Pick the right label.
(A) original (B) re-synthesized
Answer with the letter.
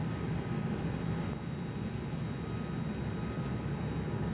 A